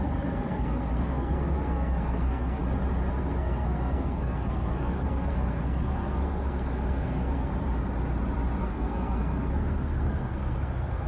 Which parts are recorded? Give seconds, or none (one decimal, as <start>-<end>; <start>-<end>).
2.6-3.1; 7.5-8.6